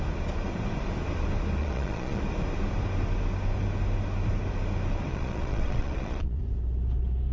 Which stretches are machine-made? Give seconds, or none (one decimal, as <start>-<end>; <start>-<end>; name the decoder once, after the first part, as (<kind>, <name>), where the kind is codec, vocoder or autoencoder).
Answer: 1.6-2.2 (vocoder, Vocos); 5.1-6.4